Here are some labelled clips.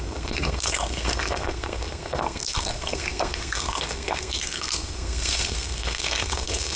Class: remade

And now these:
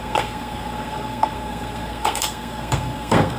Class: remade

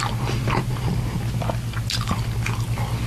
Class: recorded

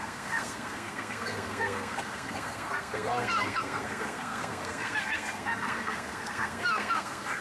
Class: remade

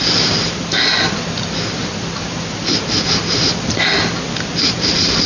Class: recorded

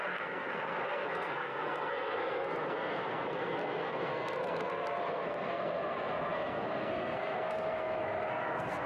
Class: remade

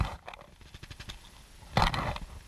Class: recorded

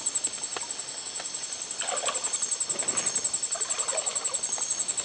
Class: recorded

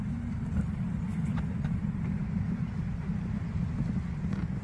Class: recorded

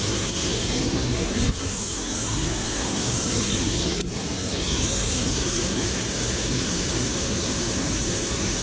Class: remade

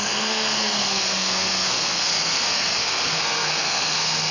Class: remade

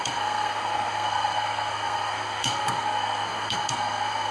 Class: remade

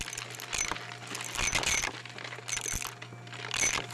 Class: recorded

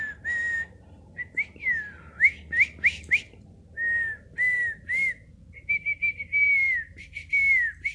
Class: recorded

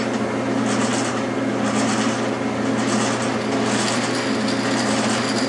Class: recorded